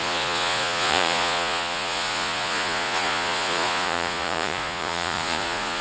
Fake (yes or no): yes